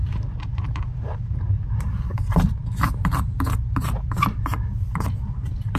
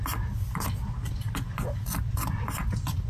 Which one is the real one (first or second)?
second